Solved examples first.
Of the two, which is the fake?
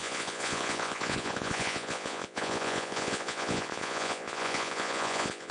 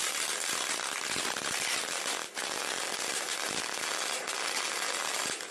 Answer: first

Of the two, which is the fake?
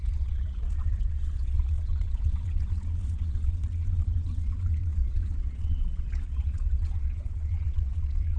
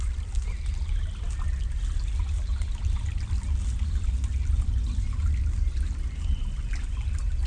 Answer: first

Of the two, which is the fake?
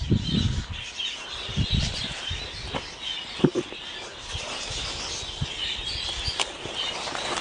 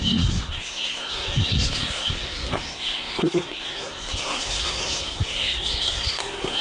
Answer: second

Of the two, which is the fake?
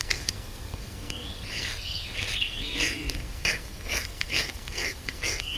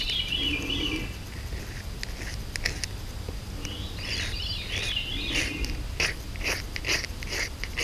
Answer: first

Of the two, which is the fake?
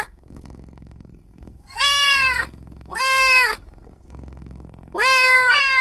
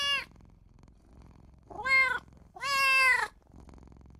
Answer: first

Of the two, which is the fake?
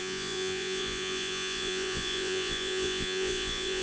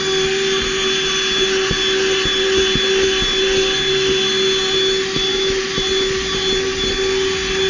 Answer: first